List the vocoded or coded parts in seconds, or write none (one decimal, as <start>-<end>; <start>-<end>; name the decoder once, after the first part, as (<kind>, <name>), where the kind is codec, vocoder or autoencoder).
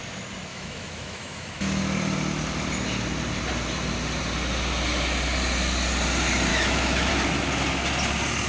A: 0.5-1.8 (autoencoder, DAC-VAE); 6.5-7.1